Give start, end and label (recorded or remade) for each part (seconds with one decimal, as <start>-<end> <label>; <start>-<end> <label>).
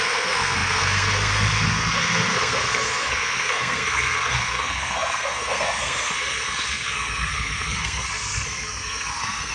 0.0-9.5 remade